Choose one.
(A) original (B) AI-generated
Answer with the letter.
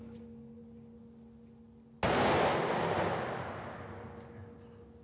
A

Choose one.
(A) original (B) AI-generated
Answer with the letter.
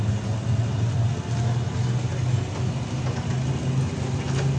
A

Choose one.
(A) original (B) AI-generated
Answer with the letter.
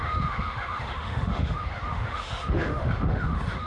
B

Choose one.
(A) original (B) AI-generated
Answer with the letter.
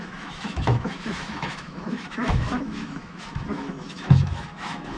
B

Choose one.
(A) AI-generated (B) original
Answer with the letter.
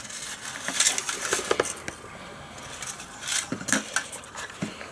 B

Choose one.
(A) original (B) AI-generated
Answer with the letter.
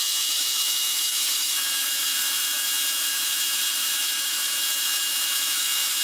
B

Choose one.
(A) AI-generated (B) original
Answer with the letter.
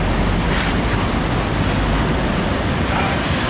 B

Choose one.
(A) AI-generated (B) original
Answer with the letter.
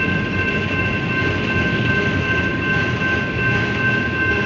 B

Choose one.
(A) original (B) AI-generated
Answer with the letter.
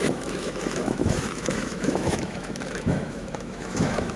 B